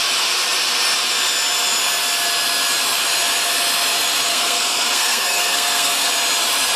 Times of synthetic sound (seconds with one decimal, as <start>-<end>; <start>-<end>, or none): 4.3-6.1